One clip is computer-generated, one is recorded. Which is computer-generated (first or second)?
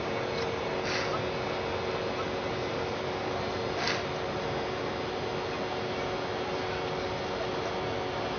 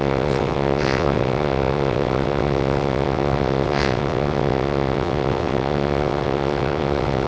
second